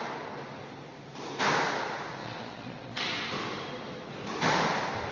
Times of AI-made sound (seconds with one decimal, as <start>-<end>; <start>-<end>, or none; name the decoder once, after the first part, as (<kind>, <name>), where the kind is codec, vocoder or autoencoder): 2.2-3.0 (vocoder, Vocos)